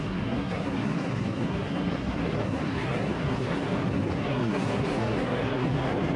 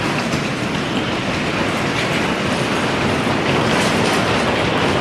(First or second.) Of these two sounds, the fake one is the first